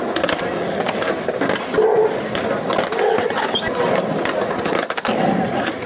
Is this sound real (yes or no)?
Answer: yes